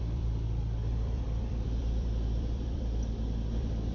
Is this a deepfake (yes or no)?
yes